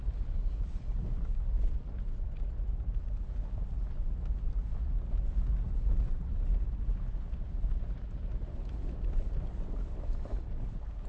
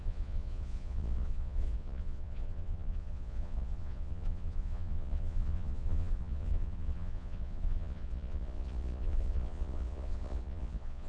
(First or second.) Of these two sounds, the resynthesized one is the second